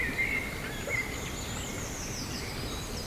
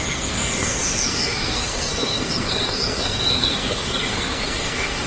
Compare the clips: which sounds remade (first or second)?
second